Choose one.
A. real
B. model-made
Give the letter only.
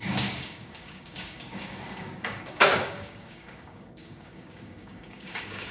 B